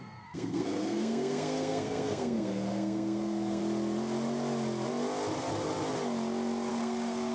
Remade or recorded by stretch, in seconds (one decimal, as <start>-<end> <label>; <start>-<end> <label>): 0.0-3.6 remade; 3.6-6.7 recorded; 6.7-7.3 remade